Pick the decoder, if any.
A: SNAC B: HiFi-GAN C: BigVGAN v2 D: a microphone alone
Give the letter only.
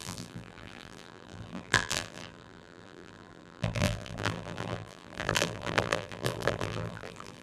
C